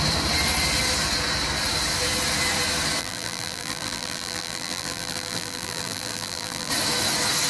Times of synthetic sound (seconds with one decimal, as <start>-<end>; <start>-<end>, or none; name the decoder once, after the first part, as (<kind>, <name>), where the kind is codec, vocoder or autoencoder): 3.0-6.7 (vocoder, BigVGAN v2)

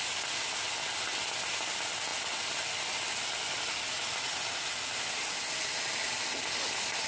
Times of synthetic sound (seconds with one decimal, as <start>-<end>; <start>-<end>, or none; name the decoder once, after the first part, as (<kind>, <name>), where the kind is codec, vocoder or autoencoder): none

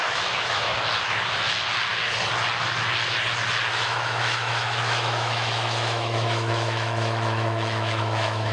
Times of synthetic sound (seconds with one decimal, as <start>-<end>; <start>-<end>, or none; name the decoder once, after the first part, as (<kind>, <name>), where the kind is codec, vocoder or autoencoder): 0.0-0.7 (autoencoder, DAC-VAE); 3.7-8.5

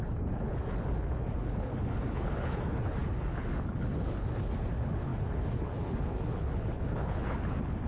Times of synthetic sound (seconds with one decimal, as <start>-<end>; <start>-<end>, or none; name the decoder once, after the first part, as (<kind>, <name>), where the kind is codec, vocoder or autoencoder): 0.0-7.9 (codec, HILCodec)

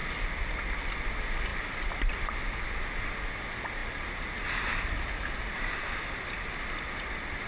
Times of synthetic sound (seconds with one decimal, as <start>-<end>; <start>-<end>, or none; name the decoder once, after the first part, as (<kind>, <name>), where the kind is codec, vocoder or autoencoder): none

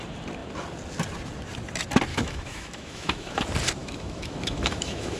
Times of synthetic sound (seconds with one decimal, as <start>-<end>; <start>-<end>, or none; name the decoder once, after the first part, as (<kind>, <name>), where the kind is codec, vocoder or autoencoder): 2.1-3.4 (autoencoder, DAC-VAE); 3.8-5.2

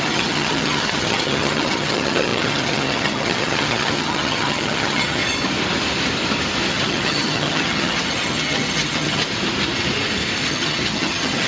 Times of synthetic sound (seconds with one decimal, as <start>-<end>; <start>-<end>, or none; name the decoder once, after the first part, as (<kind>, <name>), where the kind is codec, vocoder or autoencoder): 0.0-5.2 (vocoder, HiFi-GAN); 6.7-9.2; 10.5-11.5

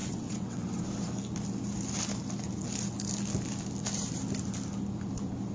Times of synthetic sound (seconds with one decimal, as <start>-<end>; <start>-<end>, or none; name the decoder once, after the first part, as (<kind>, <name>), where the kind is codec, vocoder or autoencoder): 0.0-0.8 (vocoder, WaveNeXt)